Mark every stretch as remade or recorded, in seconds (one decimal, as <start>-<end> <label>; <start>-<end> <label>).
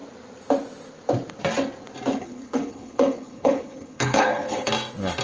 0.0-2.2 recorded; 2.2-4.7 remade; 4.7-5.2 recorded